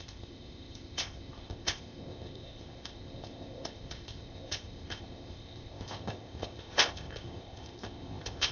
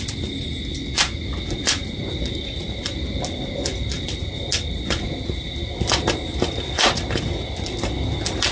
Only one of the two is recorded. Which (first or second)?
second